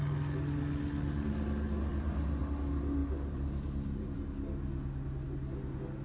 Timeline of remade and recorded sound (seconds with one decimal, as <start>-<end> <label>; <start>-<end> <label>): 0.0-1.9 recorded; 1.9-2.4 remade; 2.4-3.0 recorded; 3.0-4.2 remade; 4.2-6.0 recorded